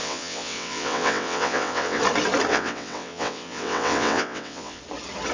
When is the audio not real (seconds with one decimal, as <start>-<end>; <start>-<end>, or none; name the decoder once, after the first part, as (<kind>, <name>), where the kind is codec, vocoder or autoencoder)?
0.0-2.0 (vocoder, WaveNeXt); 2.5-4.8